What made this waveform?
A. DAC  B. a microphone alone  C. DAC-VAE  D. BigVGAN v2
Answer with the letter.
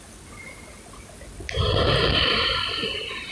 B